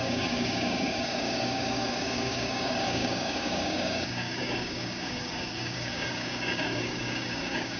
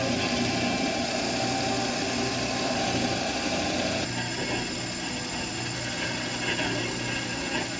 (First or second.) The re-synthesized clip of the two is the first